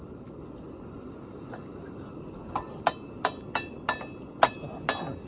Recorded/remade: recorded